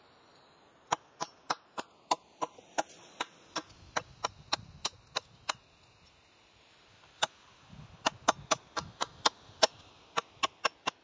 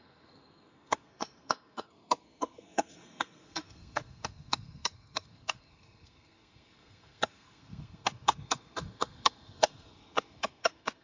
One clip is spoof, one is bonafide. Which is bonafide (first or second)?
first